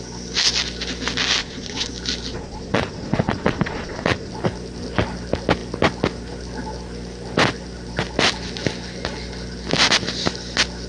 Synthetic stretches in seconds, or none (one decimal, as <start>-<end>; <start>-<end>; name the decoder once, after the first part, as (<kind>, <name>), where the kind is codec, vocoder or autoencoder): 1.4-1.9 (vocoder, Vocos); 2.3-4.3